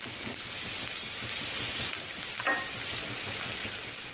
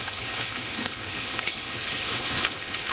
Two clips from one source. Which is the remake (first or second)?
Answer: second